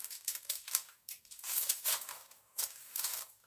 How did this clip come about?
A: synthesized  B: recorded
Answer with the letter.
A